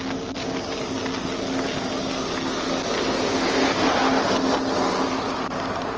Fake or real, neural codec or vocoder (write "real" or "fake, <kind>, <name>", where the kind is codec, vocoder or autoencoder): real